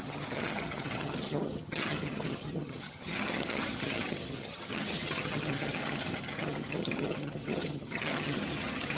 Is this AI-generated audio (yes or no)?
yes